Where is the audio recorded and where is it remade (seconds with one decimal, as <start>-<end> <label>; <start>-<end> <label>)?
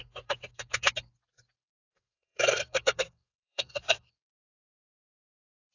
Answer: 0.0-0.9 remade; 0.9-1.8 recorded; 1.8-4.1 remade; 4.1-5.7 recorded